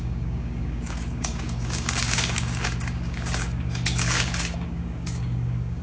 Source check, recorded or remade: remade